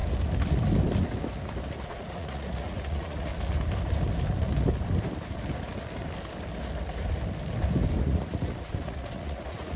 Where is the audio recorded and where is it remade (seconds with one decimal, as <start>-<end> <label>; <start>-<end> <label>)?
0.0-1.9 recorded; 1.9-3.3 remade; 3.3-8.0 recorded; 8.0-9.8 remade